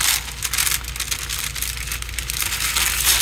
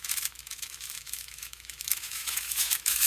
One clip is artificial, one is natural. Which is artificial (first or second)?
second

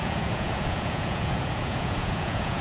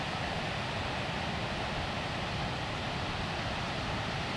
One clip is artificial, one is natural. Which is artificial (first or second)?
first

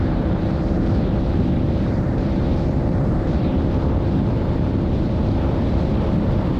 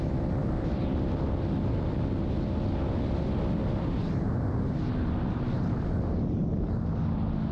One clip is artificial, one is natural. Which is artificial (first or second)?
first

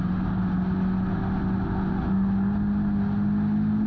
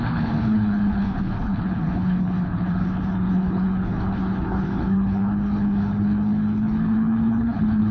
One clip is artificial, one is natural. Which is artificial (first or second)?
second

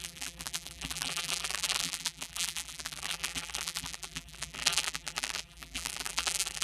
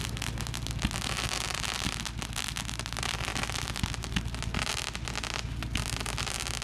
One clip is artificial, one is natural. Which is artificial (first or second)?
first